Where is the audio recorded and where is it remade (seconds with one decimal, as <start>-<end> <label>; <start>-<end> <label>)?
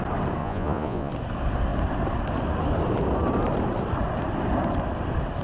0.0-0.4 recorded; 0.4-1.1 remade; 1.1-5.4 recorded